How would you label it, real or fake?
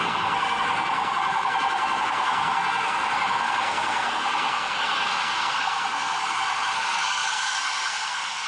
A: fake